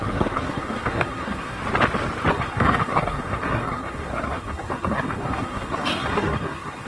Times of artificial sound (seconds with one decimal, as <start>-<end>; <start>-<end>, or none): 0.0-1.6; 2.3-6.9